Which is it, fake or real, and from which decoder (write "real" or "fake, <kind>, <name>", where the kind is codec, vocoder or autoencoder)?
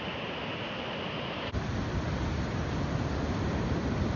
real